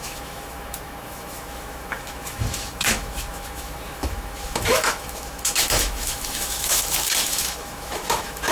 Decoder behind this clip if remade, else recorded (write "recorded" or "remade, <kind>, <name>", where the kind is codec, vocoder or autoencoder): remade, autoencoder, DAC-VAE